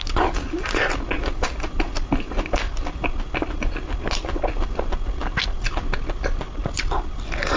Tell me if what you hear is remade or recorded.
recorded